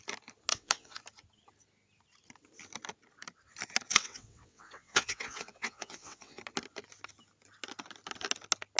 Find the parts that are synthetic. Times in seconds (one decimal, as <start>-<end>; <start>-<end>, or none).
0.5-1.0; 3.9-6.4